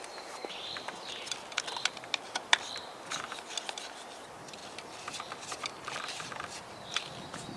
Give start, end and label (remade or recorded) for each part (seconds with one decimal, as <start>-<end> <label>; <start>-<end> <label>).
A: 0.0-0.4 recorded; 0.4-1.1 remade; 1.1-7.6 recorded